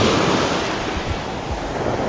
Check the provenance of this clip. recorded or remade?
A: recorded